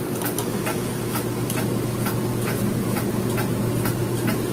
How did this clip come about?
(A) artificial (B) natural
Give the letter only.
B